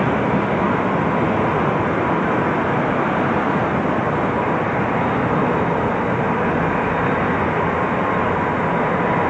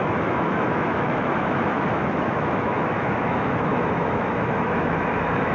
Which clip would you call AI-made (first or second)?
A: second